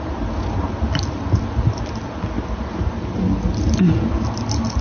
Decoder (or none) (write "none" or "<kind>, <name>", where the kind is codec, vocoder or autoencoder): none